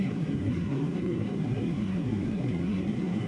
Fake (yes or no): yes